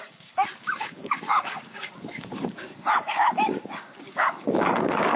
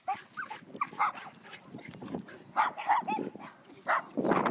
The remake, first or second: first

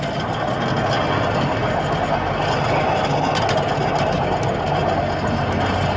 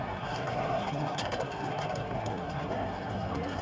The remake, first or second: second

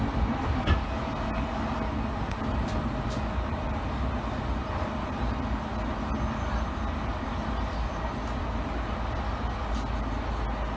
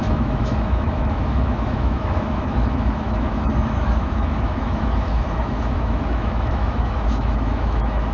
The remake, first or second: second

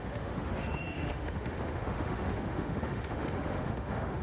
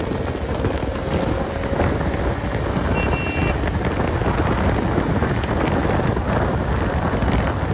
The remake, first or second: first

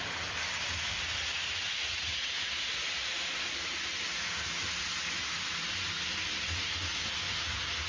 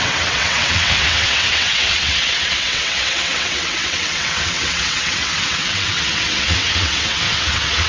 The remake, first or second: second